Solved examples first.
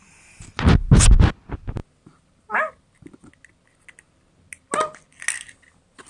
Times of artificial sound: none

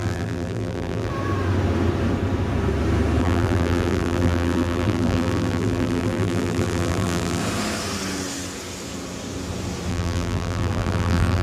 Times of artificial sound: 0.0-1.1; 3.2-7.4; 9.9-11.4

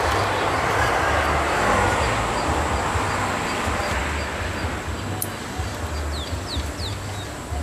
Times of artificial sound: none